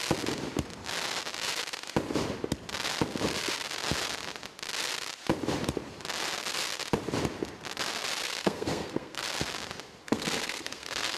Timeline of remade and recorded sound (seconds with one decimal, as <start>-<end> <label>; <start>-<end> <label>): 0.0-8.2 recorded; 8.2-9.3 remade; 9.3-10.0 recorded; 10.0-11.2 remade